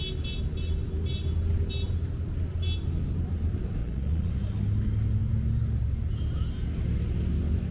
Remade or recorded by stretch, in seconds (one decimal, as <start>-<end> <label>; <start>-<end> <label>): 0.0-3.8 recorded; 3.8-4.3 remade; 4.3-7.7 recorded